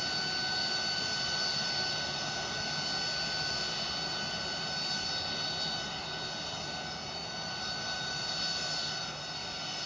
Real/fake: real